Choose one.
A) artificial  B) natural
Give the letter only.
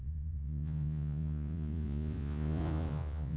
A